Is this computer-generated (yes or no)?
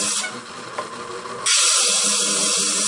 no